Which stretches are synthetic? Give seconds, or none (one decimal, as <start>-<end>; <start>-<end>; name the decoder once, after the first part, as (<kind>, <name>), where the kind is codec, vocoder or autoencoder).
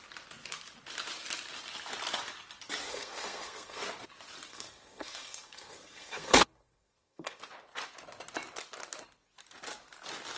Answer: 2.9-3.8 (codec, SNAC); 4.5-7.4